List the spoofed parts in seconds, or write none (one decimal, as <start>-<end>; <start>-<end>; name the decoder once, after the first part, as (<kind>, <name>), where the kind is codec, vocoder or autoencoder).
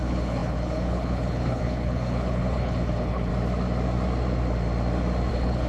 0.0-3.3 (codec, HILCodec); 5.3-5.7